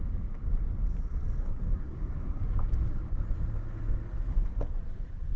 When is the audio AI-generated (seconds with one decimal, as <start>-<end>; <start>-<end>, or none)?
1.4-2.4; 4.3-4.8